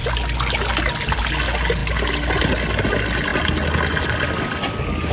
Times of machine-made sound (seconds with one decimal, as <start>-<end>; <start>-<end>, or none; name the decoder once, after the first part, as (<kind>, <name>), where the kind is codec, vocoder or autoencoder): none